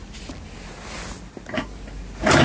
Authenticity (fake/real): real